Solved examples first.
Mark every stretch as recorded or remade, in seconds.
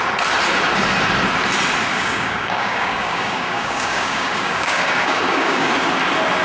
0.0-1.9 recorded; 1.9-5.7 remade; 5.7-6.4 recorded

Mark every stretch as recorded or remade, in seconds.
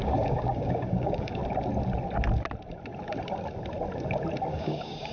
0.0-1.4 remade; 1.4-4.5 recorded; 4.5-5.1 remade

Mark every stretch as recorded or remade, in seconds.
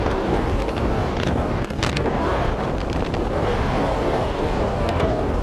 0.0-2.5 remade; 2.5-3.3 recorded; 3.3-5.4 remade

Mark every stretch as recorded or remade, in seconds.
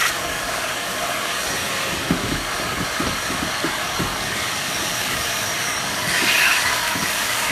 0.0-7.5 remade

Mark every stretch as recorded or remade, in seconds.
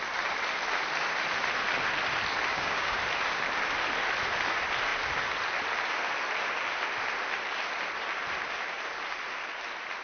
0.0-2.5 recorded; 2.5-3.0 remade; 3.0-10.0 recorded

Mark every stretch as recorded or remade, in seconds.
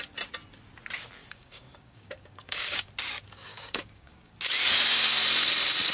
0.0-1.2 recorded; 1.2-2.9 remade; 2.9-3.5 recorded; 3.5-4.3 remade; 4.3-5.9 recorded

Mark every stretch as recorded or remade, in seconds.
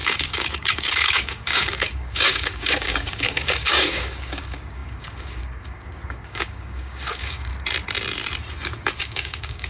0.0-7.5 remade; 7.5-9.0 recorded; 9.0-9.7 remade